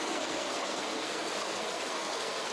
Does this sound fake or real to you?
fake